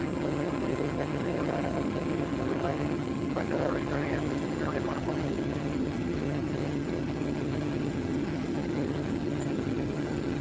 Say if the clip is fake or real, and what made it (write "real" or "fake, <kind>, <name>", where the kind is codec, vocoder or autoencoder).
fake, vocoder, HiFi-GAN